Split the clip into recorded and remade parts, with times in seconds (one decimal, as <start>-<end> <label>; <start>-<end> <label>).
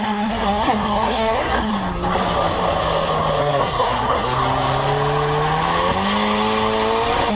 0.0-1.7 remade; 1.7-3.4 recorded; 3.4-4.4 remade; 4.4-7.3 recorded